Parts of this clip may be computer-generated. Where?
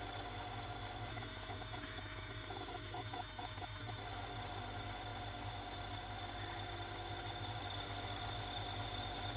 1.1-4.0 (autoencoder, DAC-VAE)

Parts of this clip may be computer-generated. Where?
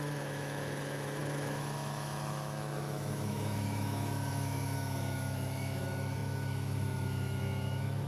0.0-8.1 (autoencoder, DAC-VAE)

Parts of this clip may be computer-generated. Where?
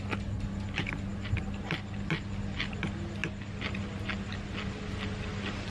none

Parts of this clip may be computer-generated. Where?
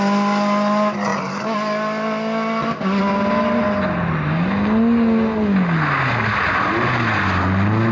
none